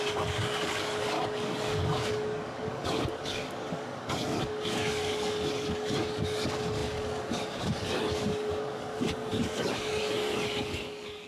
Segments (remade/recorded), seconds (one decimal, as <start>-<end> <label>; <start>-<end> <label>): 0.0-11.3 remade